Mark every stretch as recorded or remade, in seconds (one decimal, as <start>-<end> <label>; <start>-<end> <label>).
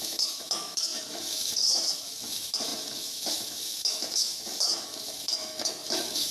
0.0-6.3 remade